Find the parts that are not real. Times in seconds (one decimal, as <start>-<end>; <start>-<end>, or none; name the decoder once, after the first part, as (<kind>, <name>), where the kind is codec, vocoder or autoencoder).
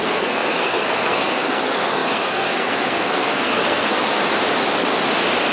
0.0-4.2 (codec, SNAC)